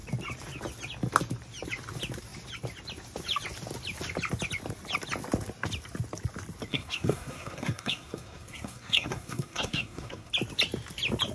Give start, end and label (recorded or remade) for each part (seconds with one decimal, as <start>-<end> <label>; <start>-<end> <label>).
0.0-6.7 recorded; 6.7-10.3 remade; 10.3-11.3 recorded